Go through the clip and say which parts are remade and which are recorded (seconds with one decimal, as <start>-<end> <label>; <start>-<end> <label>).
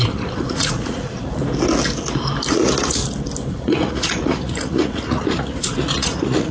0.0-1.4 remade; 1.4-2.5 recorded; 2.5-3.0 remade; 3.0-3.5 recorded; 3.5-6.5 remade